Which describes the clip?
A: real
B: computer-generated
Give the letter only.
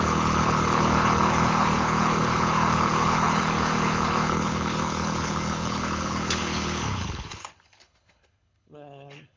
B